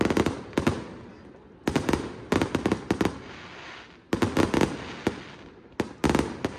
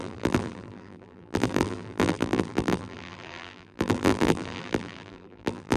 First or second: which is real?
first